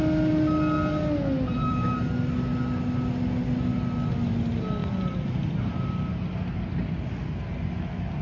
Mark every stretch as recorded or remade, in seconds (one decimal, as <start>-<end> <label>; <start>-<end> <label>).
0.0-1.5 recorded; 1.5-2.1 remade; 2.1-4.8 recorded; 4.8-5.6 remade; 5.6-8.2 recorded